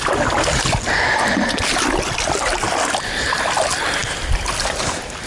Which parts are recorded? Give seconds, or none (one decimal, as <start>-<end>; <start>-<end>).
0.0-5.3